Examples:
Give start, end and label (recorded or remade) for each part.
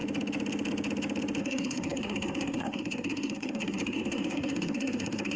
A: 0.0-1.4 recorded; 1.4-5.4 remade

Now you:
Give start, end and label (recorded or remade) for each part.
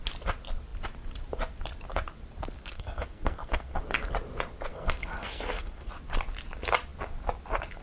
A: 0.0-2.7 recorded; 2.7-3.8 remade; 3.8-4.7 recorded; 4.7-5.9 remade; 5.9-7.8 recorded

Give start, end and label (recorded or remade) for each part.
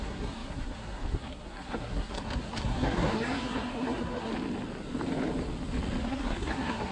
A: 0.0-4.3 remade; 4.3-6.0 recorded; 6.0-6.9 remade